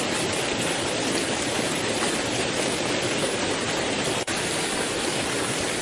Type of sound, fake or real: real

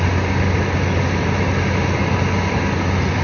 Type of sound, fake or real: real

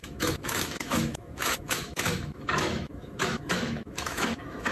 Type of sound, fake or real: fake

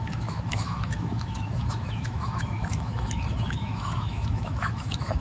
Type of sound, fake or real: fake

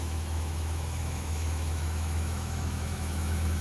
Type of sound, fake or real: fake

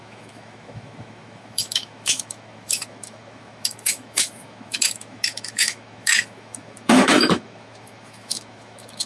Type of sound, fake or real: fake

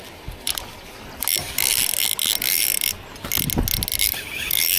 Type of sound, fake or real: real